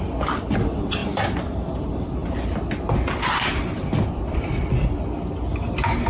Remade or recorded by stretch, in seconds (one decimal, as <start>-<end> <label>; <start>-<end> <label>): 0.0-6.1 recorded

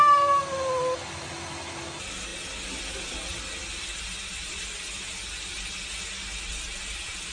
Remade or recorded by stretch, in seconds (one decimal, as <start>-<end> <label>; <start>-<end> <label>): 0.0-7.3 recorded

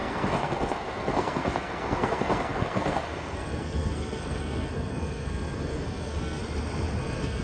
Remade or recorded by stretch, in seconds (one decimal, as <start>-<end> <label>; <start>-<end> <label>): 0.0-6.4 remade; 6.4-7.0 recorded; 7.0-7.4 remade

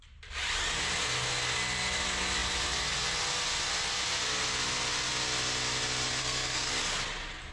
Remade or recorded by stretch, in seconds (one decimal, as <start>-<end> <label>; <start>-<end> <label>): 0.0-6.2 recorded; 6.2-6.7 remade; 6.7-7.5 recorded

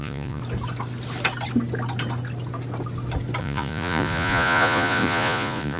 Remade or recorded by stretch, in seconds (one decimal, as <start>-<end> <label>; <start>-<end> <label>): 0.0-0.4 remade; 0.4-3.4 recorded; 3.4-5.8 remade

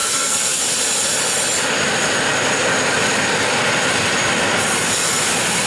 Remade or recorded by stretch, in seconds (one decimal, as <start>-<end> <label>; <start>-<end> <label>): 0.0-0.6 remade; 0.6-5.7 recorded

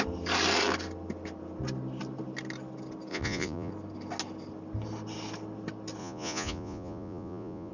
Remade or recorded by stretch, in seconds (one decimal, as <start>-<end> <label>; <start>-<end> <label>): 0.0-3.1 recorded; 3.1-3.7 remade; 3.7-6.0 recorded; 6.0-7.7 remade

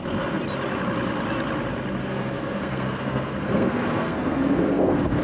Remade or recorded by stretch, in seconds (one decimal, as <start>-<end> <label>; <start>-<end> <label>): 0.0-2.0 recorded; 2.0-5.2 remade